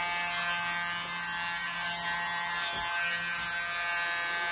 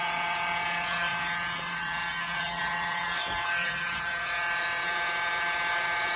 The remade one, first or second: second